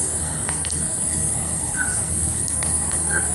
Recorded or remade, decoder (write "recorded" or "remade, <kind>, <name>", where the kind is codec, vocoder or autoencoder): remade, codec, SNAC